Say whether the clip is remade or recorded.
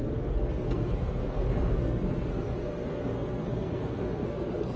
remade